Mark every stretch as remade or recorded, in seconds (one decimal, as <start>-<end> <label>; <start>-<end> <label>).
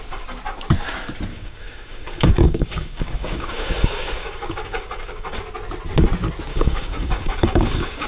0.0-1.3 recorded; 1.3-5.4 remade; 5.4-6.5 recorded; 6.5-8.1 remade